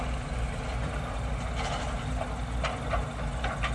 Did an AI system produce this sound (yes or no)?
no